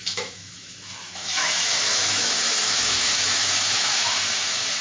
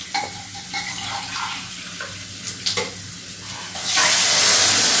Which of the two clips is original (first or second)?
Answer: second